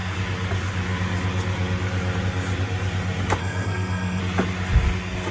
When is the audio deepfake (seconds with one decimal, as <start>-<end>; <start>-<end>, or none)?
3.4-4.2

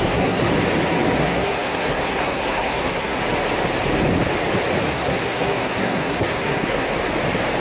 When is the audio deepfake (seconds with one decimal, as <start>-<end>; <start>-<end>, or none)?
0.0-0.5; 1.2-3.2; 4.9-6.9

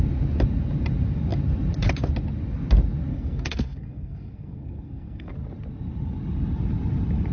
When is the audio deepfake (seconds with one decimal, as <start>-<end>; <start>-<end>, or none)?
3.1-5.3

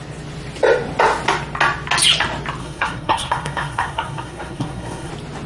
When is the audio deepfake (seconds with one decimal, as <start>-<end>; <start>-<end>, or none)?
2.6-5.1